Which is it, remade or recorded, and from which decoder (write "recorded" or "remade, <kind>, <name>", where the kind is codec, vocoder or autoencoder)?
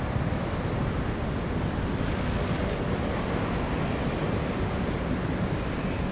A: remade, vocoder, BigVGAN v2